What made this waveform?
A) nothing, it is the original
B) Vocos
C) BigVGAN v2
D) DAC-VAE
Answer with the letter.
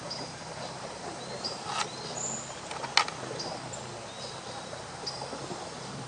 A